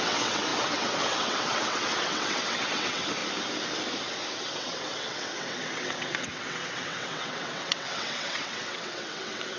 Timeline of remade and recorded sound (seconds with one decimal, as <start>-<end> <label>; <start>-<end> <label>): 0.0-3.2 remade; 3.2-4.3 recorded; 4.3-9.6 remade